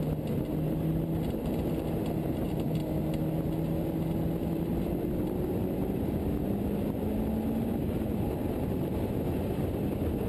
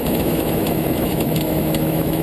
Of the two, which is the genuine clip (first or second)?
first